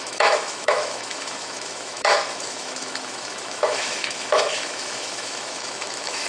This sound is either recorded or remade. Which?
remade